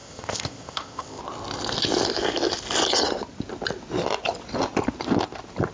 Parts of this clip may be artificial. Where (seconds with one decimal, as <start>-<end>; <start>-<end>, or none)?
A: 0.0-1.2